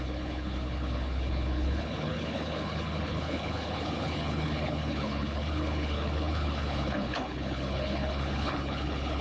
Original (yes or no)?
no